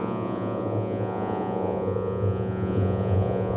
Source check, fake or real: fake